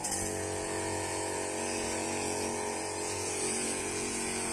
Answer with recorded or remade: remade